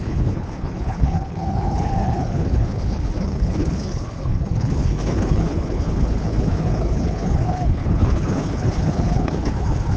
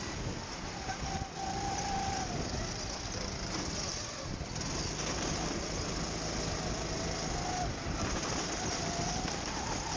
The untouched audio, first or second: second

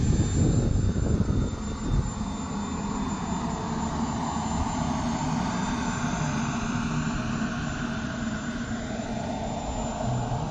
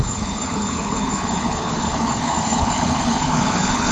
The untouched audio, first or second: first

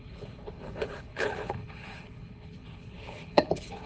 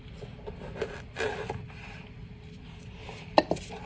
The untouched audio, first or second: second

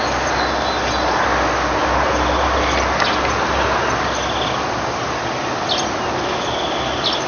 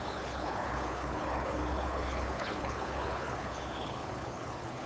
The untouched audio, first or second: first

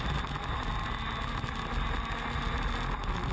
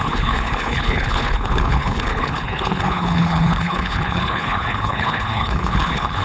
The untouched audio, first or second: first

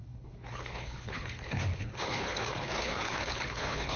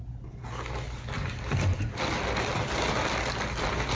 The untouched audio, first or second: second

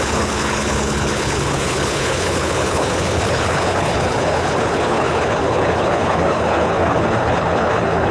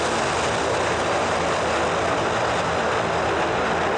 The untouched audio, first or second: second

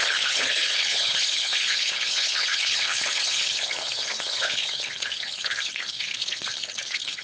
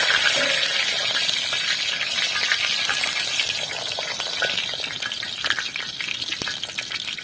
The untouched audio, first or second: second